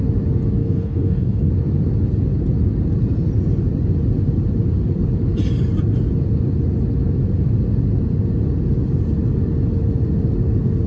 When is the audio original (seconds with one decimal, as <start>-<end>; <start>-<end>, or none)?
0.0-0.6; 1.5-10.9